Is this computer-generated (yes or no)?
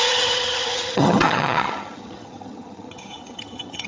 yes